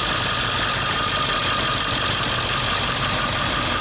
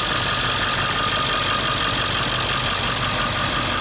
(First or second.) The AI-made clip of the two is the first